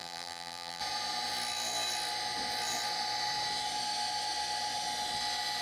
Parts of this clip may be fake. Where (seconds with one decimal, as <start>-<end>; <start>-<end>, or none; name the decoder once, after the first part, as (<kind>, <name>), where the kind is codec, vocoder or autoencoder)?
0.0-0.8 (vocoder, BigVGAN v2)